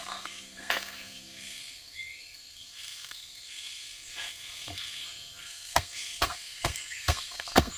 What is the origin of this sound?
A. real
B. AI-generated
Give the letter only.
B